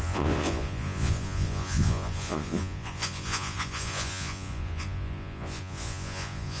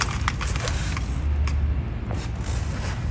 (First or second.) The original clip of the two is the second